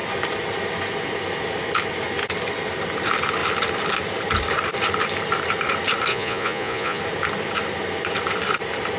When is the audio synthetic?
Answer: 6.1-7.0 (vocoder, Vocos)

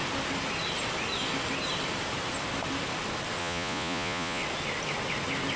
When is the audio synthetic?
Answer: 3.4-4.4 (vocoder, Vocos)